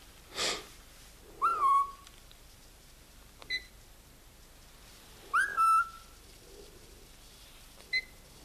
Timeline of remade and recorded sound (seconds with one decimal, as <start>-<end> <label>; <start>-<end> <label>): 0.0-1.5 recorded; 1.5-3.7 remade; 3.7-5.5 recorded; 5.5-7.0 remade; 7.0-8.4 recorded

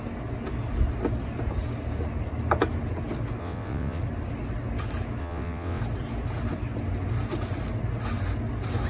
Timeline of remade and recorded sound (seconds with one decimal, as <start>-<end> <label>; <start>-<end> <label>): 0.0-3.4 recorded; 3.4-4.0 remade; 4.0-5.2 recorded; 5.2-5.8 remade; 5.8-8.9 recorded

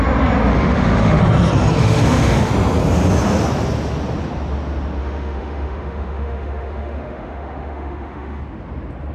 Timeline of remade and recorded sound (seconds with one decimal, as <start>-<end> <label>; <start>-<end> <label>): 0.0-0.5 recorded; 0.5-1.2 remade; 1.2-1.8 recorded; 1.8-2.5 remade; 2.5-5.0 recorded; 5.0-8.4 remade; 8.4-9.1 recorded

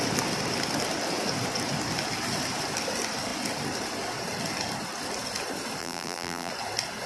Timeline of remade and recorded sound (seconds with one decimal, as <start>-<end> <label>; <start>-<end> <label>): 0.0-5.8 recorded; 5.8-6.5 remade; 6.5-7.1 recorded